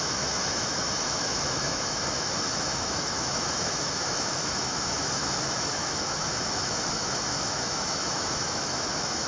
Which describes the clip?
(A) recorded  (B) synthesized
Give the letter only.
B